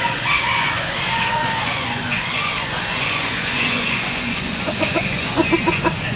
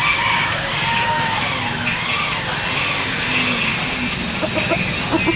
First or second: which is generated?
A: first